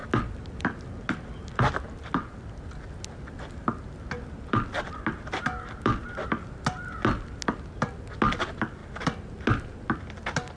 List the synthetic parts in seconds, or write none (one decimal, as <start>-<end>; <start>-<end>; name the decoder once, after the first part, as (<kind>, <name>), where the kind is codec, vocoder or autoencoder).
none